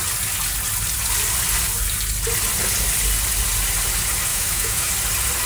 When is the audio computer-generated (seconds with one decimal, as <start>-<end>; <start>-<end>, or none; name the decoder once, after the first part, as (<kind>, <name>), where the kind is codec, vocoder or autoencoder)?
4.3-4.9 (autoencoder, DAC-VAE)